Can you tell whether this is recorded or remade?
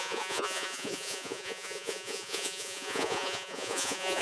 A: remade